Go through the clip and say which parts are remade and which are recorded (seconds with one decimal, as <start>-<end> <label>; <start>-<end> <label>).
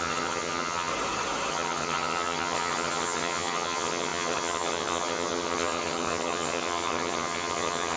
0.0-0.9 remade; 0.9-1.5 recorded; 1.5-8.0 remade